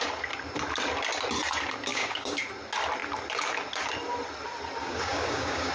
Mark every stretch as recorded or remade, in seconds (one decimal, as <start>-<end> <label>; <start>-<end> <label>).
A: 0.0-1.9 recorded; 1.9-2.4 remade; 2.4-4.8 recorded; 4.8-5.7 remade